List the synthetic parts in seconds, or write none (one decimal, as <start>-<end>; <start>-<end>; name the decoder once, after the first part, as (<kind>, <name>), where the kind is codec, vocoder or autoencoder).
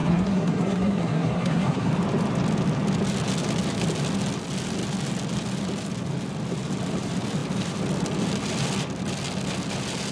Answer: 0.0-1.9 (codec, SNAC)